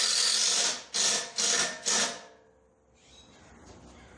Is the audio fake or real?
real